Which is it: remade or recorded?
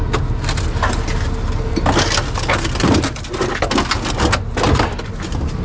recorded